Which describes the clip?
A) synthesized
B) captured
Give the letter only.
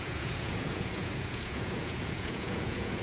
A